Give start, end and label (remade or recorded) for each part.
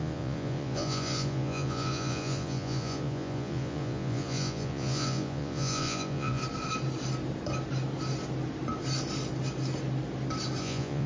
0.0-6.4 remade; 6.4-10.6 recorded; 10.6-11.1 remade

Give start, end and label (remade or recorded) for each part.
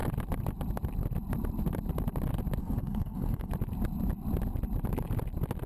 0.0-2.6 recorded; 2.6-3.5 remade; 3.5-5.7 recorded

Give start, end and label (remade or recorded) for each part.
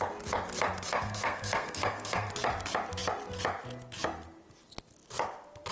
0.0-0.9 recorded; 0.9-2.3 remade; 2.3-5.7 recorded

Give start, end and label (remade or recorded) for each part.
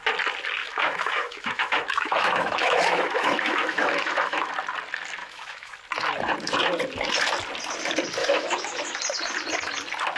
0.0-0.6 recorded; 0.6-4.5 remade; 4.5-5.2 recorded; 5.2-5.7 remade; 5.7-8.2 recorded; 8.2-9.0 remade; 9.0-10.2 recorded